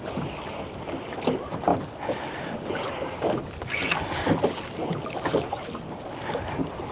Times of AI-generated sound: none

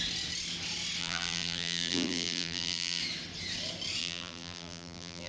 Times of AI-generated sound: 1.0-3.0 (vocoder, BigVGAN v2); 4.0-5.3

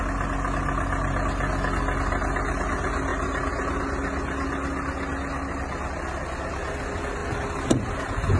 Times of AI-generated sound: none

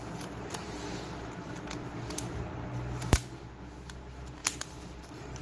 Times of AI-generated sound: 4.4-5.4 (vocoder, BigVGAN v2)